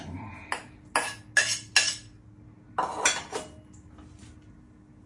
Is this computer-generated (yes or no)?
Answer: no